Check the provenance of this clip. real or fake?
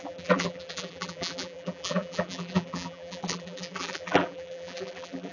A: fake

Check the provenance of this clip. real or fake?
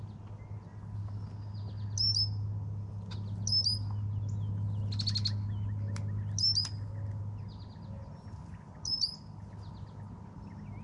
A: real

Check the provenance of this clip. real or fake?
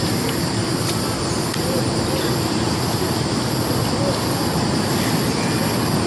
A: real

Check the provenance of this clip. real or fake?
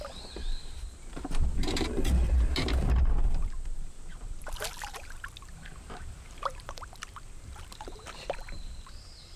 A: fake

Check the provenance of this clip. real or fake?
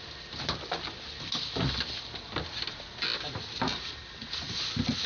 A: real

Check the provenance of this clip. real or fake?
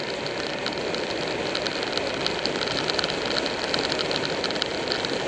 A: real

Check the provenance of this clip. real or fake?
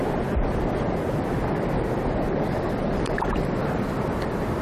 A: real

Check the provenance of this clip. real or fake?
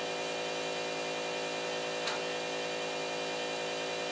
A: real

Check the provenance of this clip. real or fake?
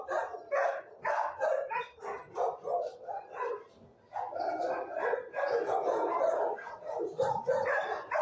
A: real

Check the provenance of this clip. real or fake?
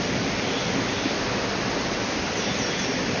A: real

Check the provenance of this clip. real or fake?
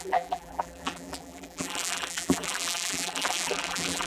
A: fake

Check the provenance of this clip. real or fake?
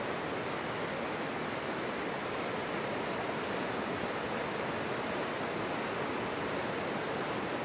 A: real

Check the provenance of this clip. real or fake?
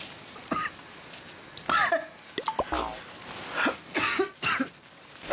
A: real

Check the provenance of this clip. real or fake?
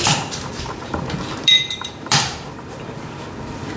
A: fake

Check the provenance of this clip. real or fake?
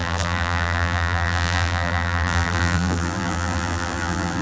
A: fake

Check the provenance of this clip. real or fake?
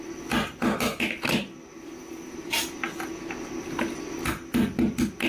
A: real